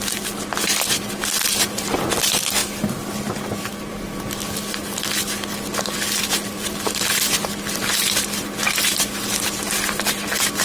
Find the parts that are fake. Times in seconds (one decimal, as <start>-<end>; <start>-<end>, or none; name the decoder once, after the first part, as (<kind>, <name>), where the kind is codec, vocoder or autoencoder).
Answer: none